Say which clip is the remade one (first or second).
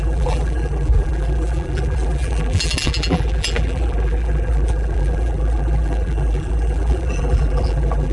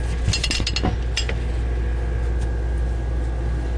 first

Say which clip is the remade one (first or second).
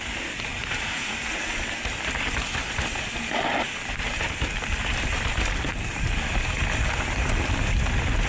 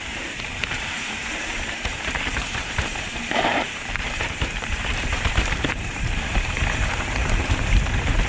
second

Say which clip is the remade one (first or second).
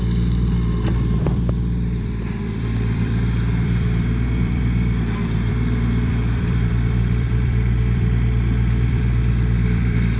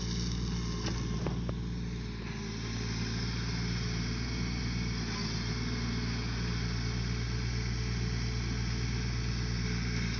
first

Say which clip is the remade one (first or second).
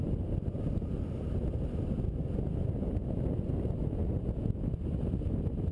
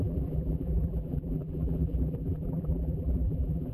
second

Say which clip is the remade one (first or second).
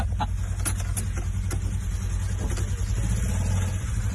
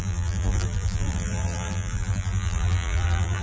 second